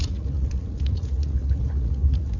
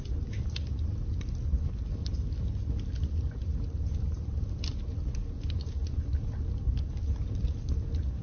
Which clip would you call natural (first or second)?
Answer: second